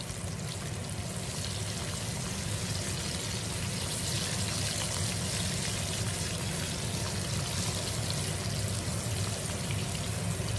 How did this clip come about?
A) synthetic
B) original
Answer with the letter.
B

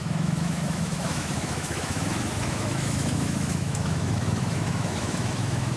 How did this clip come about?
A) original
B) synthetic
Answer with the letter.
B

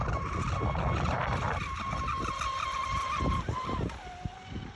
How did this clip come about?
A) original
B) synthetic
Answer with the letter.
A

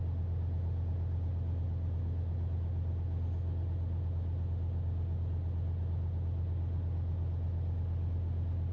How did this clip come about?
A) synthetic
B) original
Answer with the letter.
B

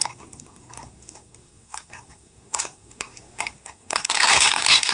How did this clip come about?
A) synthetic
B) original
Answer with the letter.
A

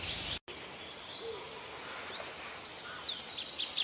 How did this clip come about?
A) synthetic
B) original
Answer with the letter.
B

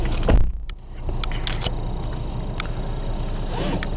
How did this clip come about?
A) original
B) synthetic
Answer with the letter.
A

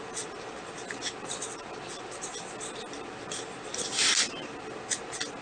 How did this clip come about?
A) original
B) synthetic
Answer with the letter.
A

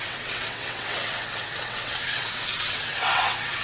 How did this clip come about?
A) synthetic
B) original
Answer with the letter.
A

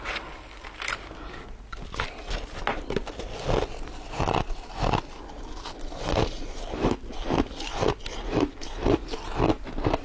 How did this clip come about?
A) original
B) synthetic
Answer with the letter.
A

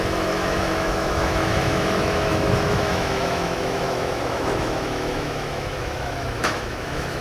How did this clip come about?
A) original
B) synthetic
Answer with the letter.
B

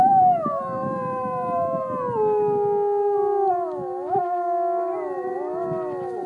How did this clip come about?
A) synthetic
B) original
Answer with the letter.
B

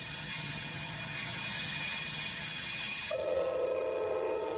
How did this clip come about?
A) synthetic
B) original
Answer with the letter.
A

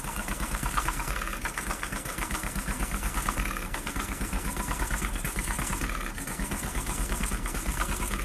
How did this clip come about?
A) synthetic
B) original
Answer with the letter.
A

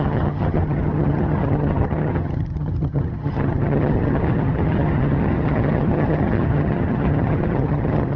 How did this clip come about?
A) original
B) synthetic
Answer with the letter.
B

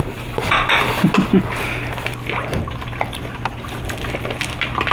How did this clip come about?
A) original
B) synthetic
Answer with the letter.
A